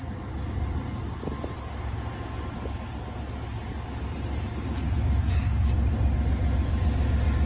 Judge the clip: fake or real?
real